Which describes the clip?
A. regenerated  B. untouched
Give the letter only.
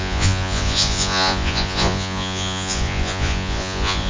A